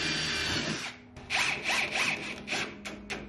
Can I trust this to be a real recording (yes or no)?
yes